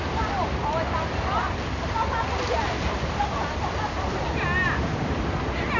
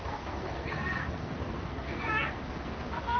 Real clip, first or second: first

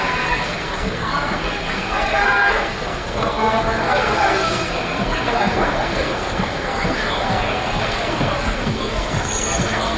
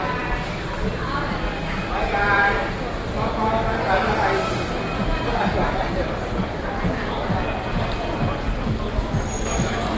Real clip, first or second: second